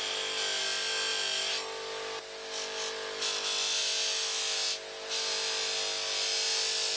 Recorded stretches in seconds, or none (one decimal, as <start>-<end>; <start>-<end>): 0.0-7.0